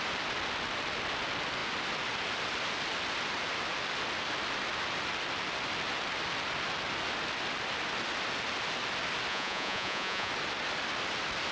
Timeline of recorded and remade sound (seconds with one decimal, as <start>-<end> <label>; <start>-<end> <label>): 0.0-9.3 recorded; 9.3-10.3 remade; 10.3-11.5 recorded